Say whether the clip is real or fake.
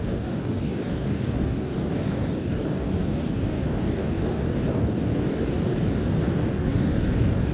fake